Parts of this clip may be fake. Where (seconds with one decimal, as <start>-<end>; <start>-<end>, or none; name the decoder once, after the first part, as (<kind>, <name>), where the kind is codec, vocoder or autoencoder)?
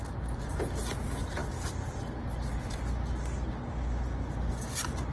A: none